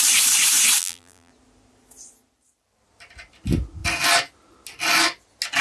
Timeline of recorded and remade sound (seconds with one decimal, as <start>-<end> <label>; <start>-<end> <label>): 0.0-0.8 recorded; 0.8-1.3 remade; 1.3-5.6 recorded